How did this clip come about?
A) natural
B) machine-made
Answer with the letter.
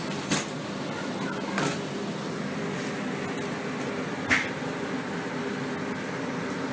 A